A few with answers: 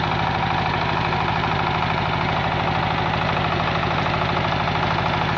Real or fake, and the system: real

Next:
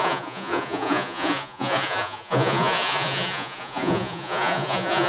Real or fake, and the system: fake, vocoder, Vocos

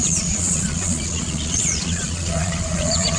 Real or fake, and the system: fake, vocoder, Vocos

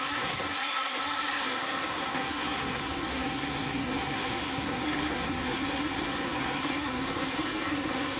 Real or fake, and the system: fake, codec, SNAC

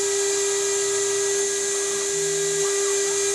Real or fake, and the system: real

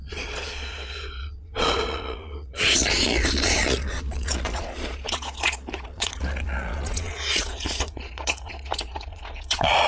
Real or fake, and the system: fake, vocoder, Vocos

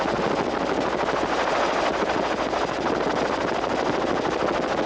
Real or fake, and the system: real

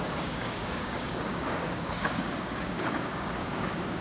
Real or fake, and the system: fake, codec, DAC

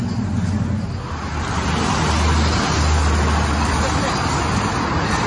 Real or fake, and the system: real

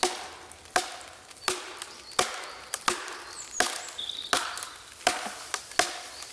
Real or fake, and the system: real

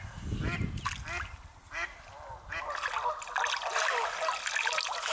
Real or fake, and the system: real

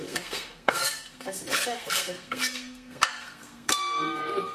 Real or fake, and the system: fake, codec, SNAC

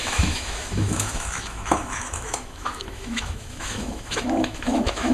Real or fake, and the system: fake, autoencoder, DAC-VAE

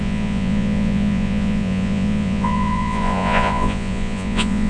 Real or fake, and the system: fake, vocoder, Vocos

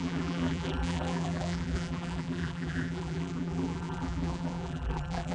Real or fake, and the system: fake, vocoder, BigVGAN v2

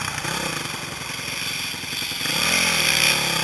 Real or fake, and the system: real